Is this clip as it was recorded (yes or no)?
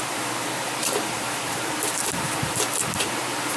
no